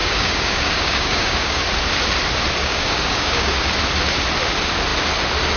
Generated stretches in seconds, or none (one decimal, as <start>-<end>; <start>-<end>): 0.0-1.6; 2.6-3.7

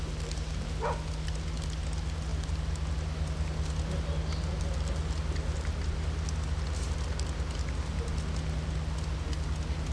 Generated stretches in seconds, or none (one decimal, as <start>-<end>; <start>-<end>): none

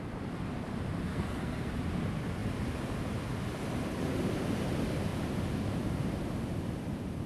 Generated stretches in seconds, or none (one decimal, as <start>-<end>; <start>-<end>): 1.1-1.7

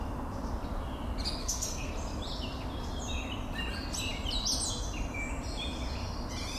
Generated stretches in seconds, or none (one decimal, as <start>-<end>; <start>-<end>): 1.4-1.9

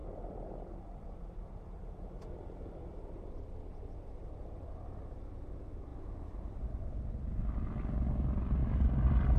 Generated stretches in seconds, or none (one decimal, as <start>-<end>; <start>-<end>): 0.0-5.1; 5.9-6.7; 8.6-9.4

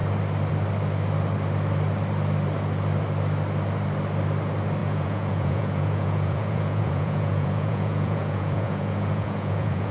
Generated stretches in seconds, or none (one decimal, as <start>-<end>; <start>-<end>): 4.8-9.9

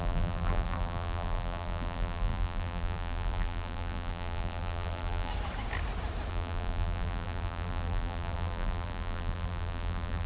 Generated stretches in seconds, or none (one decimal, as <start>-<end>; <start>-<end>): 0.0-5.3; 6.3-10.3

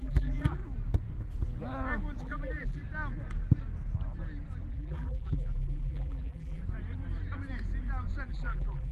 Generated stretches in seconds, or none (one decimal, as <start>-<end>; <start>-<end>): 0.0-0.6; 2.2-2.8; 4.7-6.6; 8.3-8.9